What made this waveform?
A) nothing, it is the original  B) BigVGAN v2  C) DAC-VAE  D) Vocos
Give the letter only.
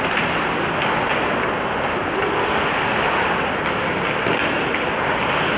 A